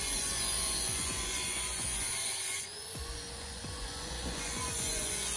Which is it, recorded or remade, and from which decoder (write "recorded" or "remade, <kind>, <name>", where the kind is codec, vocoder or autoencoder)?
remade, vocoder, Vocos